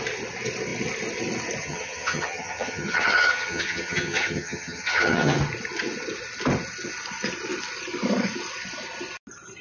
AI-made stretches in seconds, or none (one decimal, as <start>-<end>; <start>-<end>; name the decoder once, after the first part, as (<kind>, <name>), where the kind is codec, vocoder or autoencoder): 1.6-5.4 (vocoder, HiFi-GAN)